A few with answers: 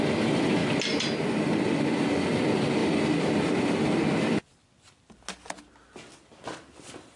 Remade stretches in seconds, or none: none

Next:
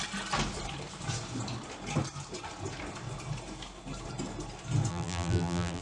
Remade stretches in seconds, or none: 4.9-5.8 (vocoder, BigVGAN v2)

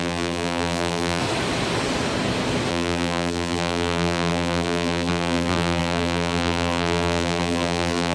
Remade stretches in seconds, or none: 0.0-1.2 (vocoder, BigVGAN v2); 2.7-8.1

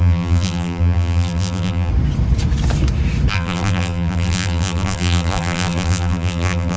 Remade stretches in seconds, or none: 0.0-1.9 (vocoder, BigVGAN v2); 3.3-6.8

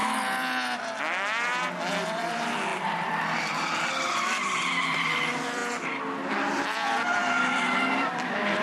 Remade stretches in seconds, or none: 1.9-5.6 (vocoder, BigVGAN v2); 6.3-8.6